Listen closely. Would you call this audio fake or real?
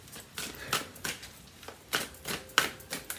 real